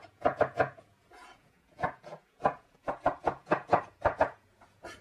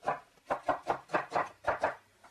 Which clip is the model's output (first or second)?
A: first